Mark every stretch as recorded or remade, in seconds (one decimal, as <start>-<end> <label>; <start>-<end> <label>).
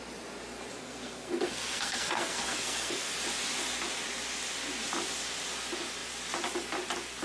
0.0-0.7 recorded; 0.7-3.1 remade; 3.1-7.2 recorded